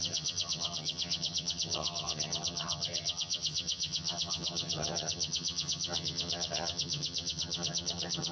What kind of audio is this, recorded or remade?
remade